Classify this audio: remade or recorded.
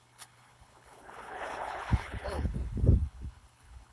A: remade